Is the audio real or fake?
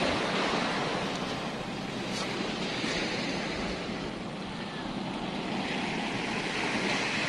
real